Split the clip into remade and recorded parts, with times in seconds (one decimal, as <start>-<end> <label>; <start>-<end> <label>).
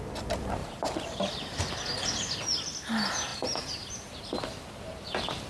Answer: 0.0-0.6 recorded; 0.6-1.6 remade; 1.6-3.3 recorded; 3.3-4.2 remade; 4.2-5.5 recorded